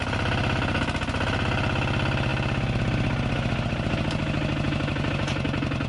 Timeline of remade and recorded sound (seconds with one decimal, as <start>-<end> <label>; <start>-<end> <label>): 0.0-5.9 recorded